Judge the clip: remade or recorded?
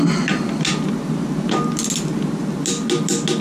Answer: recorded